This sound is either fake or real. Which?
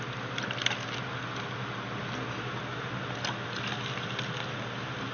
real